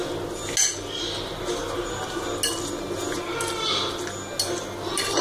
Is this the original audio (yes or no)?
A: yes